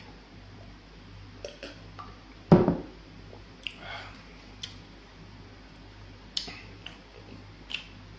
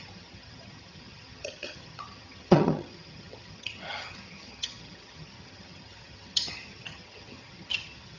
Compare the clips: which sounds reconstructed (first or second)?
second